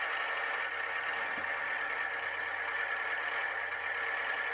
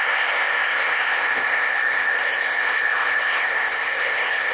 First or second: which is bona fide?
first